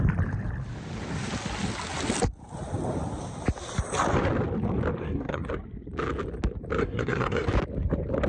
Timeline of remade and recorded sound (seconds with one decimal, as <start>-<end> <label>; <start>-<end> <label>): 0.0-5.0 recorded; 5.0-5.5 remade; 5.5-6.8 recorded; 6.8-7.5 remade; 7.5-8.3 recorded